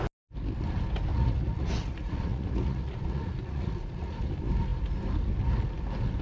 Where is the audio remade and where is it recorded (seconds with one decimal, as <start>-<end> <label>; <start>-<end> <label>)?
0.0-1.1 recorded; 1.1-4.3 remade; 4.3-6.2 recorded